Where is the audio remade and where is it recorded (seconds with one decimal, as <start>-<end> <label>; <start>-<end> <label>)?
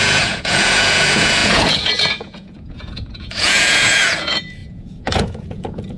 0.0-6.0 remade